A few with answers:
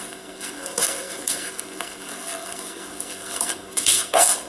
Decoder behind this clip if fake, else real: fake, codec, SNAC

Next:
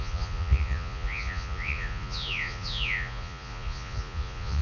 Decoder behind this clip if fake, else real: fake, vocoder, Vocos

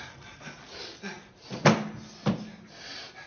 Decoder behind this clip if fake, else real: real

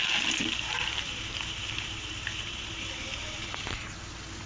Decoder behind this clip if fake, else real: real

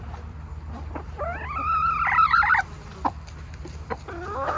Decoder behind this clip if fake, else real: real